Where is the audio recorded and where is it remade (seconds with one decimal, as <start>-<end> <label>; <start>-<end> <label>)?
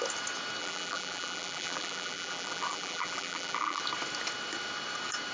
0.0-0.6 recorded; 0.6-3.8 remade; 3.8-5.3 recorded